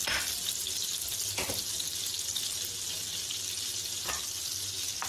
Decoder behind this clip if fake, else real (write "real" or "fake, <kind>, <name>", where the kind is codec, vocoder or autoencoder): real